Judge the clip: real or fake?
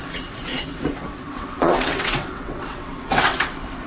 fake